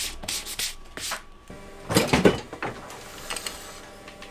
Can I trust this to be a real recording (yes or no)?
yes